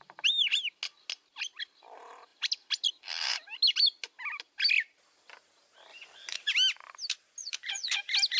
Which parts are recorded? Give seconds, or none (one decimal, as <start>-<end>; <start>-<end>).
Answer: 0.0-5.9; 6.5-7.4; 8.0-8.4